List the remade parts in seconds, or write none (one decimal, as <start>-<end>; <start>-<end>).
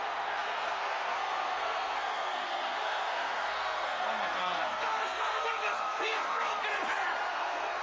0.0-6.5; 7.3-7.8